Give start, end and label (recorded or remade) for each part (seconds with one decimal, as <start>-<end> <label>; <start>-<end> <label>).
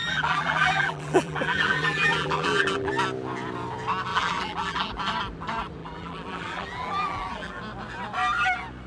0.0-2.9 remade; 2.9-4.1 recorded; 4.1-4.9 remade; 4.9-5.8 recorded; 5.8-7.6 remade; 7.6-8.9 recorded